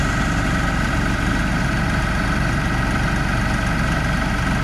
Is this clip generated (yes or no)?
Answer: no